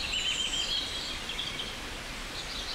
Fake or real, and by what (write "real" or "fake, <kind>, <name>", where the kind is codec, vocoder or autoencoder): real